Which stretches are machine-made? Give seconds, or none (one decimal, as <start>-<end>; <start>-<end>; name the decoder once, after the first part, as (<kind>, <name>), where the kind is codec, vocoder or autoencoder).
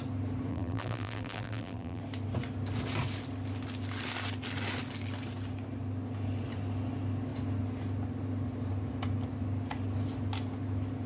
0.5-2.0 (vocoder, BigVGAN v2)